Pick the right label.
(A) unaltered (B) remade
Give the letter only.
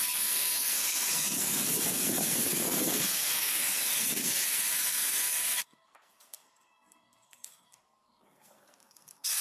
B